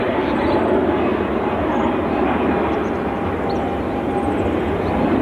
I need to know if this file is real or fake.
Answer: real